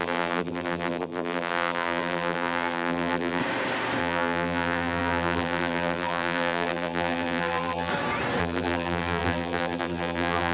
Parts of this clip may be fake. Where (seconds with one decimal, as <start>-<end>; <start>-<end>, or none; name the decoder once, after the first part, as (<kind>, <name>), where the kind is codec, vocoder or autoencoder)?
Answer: 0.0-3.4 (vocoder, BigVGAN v2); 4.0-7.9; 8.4-10.5